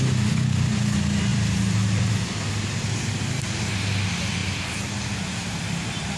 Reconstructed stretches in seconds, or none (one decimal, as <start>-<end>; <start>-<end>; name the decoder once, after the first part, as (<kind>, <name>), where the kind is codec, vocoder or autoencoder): 1.3-2.1 (vocoder, BigVGAN v2)